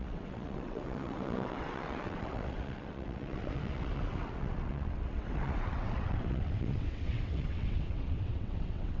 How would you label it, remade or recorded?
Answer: remade